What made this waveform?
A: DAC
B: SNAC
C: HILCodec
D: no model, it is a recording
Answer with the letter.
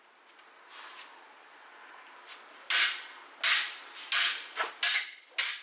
D